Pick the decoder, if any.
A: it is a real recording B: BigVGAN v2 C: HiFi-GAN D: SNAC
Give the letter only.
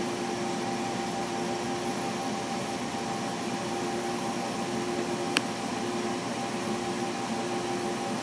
A